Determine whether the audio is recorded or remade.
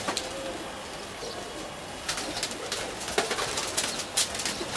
recorded